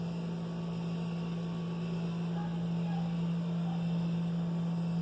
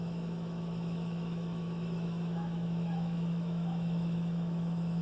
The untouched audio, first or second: first